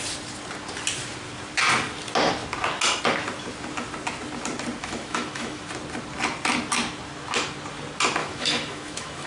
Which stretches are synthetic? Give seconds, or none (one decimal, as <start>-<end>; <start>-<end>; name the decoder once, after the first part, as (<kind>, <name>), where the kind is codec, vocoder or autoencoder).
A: 4.8-5.6 (autoencoder, DAC-VAE); 8.2-9.3

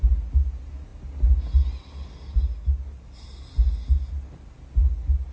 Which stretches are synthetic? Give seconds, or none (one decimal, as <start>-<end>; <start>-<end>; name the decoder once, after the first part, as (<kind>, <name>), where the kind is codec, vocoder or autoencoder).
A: none

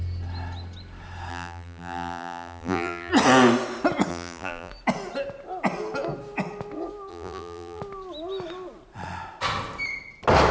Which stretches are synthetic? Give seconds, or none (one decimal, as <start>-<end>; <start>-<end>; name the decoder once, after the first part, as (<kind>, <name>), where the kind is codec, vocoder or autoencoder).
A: 1.3-3.1 (vocoder, BigVGAN v2); 4.1-4.7; 7.1-7.8

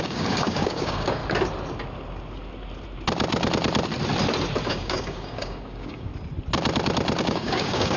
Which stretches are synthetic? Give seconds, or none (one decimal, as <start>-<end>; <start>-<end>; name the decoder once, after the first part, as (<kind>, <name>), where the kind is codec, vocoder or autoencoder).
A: 0.0-1.2 (codec, DAC); 4.7-6.1; 7.2-8.0

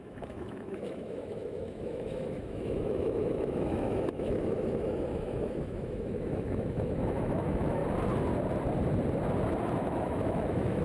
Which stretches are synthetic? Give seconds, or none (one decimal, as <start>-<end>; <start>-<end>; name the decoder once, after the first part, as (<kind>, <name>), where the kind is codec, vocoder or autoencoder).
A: 0.0-7.8 (autoencoder, DAC-VAE); 9.8-10.8

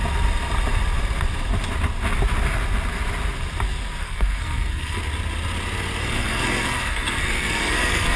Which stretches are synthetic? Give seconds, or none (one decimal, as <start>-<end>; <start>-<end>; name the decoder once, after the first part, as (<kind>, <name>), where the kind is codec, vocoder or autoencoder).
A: 4.0-5.0 (codec, SNAC); 6.0-8.2

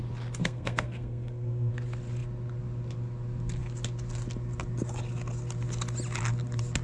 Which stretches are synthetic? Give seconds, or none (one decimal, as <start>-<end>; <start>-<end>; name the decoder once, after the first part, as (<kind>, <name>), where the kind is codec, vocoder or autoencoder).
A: 0.4-1.7 (codec, SNAC)

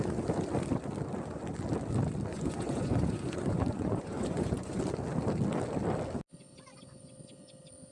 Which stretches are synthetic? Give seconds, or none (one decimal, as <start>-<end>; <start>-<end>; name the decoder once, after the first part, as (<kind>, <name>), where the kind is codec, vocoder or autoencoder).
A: 2.3-4.8 (vocoder, Vocos)